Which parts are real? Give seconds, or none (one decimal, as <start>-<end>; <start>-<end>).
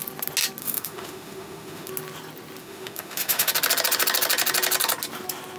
0.0-0.6; 1.9-2.6; 3.5-5.6